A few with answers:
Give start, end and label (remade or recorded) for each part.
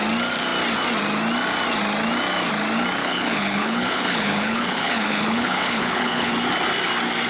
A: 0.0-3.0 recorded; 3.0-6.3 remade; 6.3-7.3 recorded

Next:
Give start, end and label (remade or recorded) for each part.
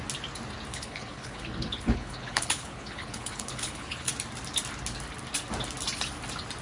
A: 0.0-0.7 recorded; 0.7-4.1 remade; 4.1-6.6 recorded